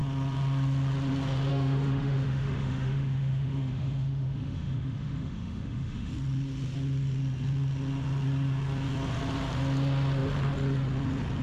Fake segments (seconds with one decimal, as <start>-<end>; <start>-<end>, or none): 1.5-6.1